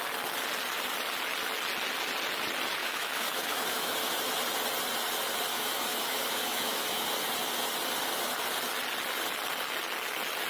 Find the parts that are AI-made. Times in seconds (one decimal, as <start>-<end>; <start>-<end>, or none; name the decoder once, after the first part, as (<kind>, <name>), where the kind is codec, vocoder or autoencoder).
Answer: 2.8-4.1 (autoencoder, DAC-VAE); 5.5-7.1

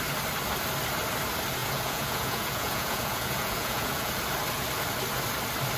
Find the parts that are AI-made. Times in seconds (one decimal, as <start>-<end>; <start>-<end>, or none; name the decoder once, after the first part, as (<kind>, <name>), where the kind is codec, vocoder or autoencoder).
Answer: 1.6-4.2 (vocoder, Vocos)